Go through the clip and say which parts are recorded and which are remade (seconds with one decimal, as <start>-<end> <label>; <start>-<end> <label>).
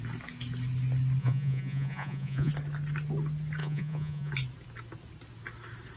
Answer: 0.0-1.2 recorded; 1.2-2.5 remade; 2.5-3.6 recorded; 3.6-4.3 remade; 4.3-6.0 recorded